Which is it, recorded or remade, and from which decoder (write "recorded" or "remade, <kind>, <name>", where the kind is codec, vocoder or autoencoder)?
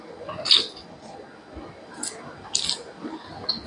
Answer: recorded